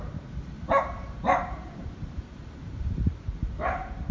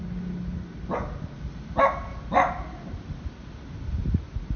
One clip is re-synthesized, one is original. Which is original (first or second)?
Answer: second